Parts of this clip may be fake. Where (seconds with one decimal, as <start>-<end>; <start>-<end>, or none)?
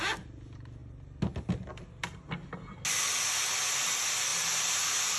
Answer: 4.3-5.2